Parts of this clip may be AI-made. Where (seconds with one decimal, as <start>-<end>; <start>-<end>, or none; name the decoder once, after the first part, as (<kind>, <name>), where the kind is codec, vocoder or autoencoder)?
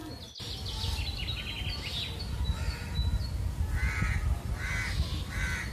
none